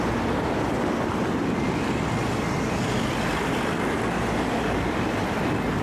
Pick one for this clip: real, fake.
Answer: real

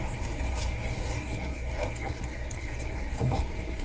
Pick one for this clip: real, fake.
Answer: fake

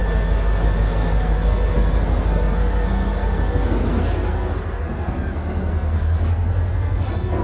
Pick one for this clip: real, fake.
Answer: fake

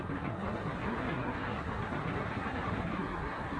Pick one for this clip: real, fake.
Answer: fake